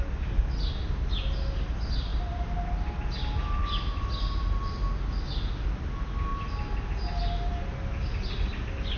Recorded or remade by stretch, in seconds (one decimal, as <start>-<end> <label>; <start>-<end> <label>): 0.0-9.0 recorded